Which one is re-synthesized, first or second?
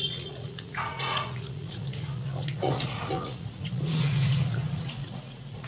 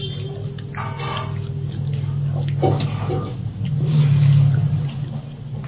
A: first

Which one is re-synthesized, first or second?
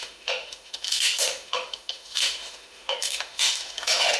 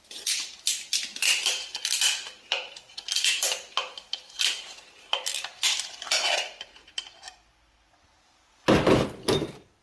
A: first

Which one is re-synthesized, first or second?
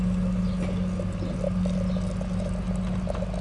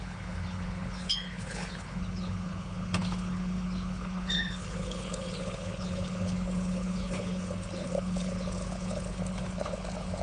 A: second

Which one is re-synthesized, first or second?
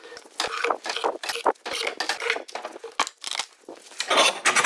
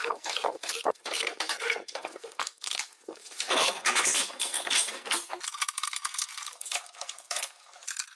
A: second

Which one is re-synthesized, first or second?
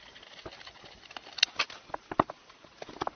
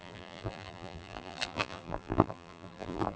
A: second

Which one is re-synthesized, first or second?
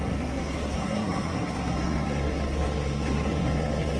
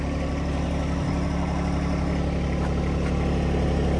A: first